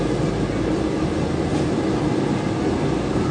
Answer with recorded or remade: recorded